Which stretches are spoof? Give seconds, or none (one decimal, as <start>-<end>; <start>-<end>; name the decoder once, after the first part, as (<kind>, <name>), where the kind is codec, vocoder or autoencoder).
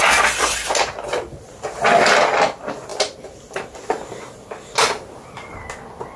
none